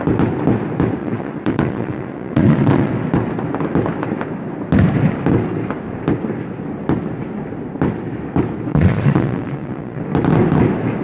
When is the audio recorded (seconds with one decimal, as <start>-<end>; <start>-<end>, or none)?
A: 0.0-1.0; 2.9-8.7; 10.0-11.0